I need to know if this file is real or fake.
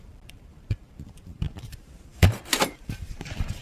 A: fake